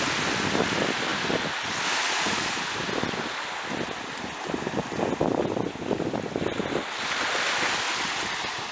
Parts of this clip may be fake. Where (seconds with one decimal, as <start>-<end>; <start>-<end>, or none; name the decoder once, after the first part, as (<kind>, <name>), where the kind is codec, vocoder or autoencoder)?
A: none

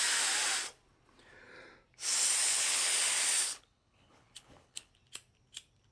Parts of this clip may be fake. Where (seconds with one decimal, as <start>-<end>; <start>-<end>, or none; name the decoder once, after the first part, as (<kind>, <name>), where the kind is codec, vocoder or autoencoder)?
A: 2.4-3.0 (codec, HILCodec); 3.4-4.9

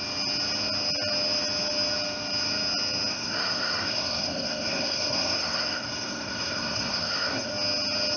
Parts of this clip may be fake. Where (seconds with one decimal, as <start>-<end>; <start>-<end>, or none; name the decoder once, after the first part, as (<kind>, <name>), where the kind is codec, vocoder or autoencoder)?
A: 3.1-7.5 (codec, SNAC)